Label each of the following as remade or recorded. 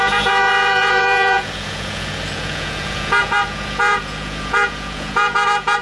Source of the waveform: remade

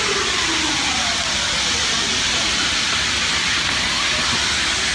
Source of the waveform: recorded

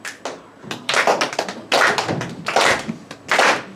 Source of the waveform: recorded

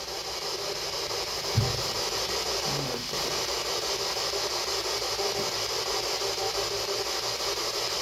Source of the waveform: recorded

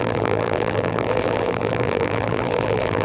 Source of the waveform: remade